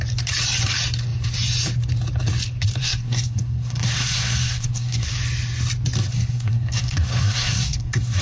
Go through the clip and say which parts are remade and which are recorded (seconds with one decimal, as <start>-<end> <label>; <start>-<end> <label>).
0.0-2.8 recorded; 2.8-5.1 remade; 5.1-6.1 recorded; 6.1-8.2 remade

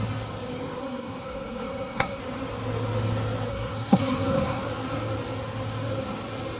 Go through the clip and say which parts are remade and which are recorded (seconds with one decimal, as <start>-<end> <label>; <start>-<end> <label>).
0.0-0.8 recorded; 0.8-2.2 remade; 2.2-3.5 recorded; 3.5-4.6 remade; 4.6-6.6 recorded